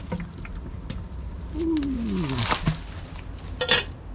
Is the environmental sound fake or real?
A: real